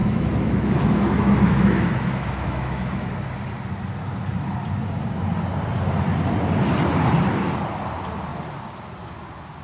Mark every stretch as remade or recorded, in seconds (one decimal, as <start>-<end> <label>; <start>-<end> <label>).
0.0-3.1 remade; 3.1-9.6 recorded